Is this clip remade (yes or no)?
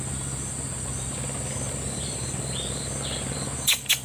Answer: yes